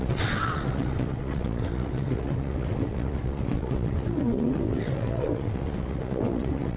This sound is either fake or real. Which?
fake